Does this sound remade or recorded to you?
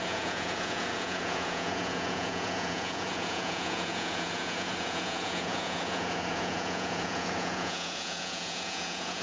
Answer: remade